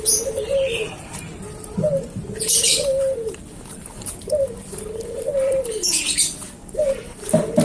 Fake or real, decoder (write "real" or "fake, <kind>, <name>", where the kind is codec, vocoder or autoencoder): fake, vocoder, BigVGAN v2